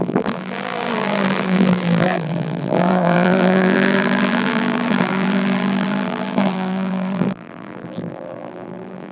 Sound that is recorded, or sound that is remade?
remade